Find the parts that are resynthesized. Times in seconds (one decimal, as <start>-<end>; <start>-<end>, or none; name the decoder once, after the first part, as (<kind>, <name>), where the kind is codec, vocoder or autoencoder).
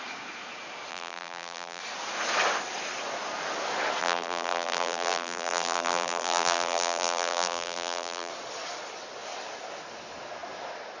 0.9-1.8 (vocoder, BigVGAN v2); 4.0-8.3